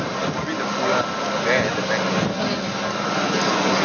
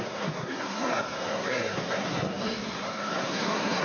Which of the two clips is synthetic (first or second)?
second